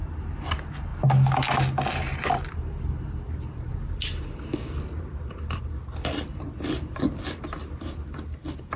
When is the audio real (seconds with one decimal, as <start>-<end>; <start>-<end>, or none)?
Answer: 0.0-8.8